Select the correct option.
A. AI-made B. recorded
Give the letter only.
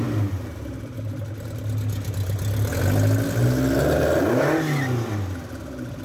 B